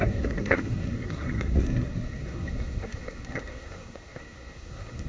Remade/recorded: remade